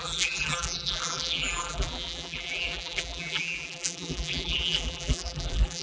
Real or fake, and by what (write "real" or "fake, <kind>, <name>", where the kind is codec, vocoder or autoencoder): fake, vocoder, BigVGAN v2